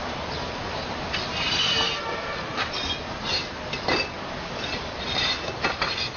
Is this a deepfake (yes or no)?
no